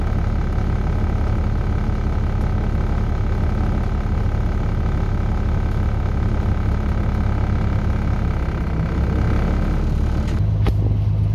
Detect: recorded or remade recorded